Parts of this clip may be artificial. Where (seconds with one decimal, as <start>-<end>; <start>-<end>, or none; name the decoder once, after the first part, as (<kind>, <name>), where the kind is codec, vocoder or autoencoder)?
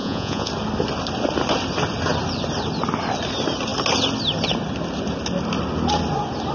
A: 0.0-0.5 (vocoder, Vocos)